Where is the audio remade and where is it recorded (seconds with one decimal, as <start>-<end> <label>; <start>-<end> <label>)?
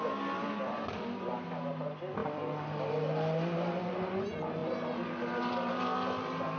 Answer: 0.0-6.6 recorded